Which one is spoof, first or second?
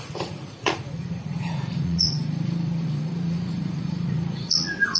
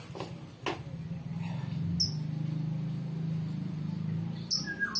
first